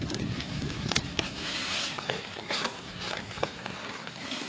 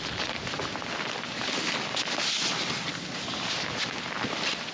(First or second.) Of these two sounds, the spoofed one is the first